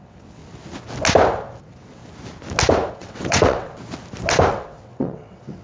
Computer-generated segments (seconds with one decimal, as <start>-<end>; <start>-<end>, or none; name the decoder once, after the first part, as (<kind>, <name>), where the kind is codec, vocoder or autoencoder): 0.0-0.4 (vocoder, WaveNeXt); 1.6-2.0; 2.9-3.7; 4.5-5.6